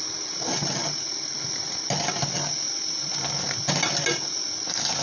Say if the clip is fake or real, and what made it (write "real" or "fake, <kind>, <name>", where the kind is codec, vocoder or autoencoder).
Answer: real